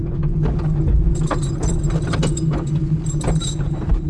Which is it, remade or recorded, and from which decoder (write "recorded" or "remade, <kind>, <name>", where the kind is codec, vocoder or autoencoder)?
recorded